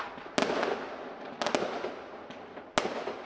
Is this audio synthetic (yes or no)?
no